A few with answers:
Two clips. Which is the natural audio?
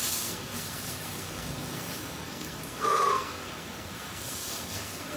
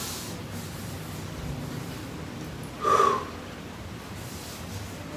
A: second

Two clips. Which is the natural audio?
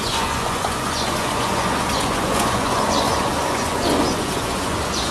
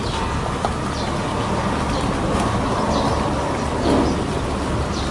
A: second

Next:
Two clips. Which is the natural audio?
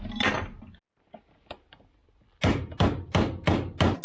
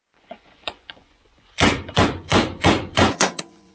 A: first